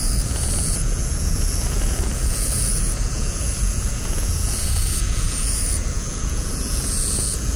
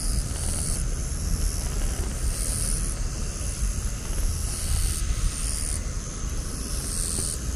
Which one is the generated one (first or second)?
first